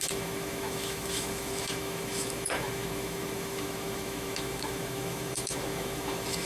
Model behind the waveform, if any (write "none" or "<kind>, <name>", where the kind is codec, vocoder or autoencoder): autoencoder, DAC-VAE